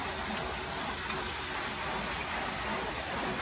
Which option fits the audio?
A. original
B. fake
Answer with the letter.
A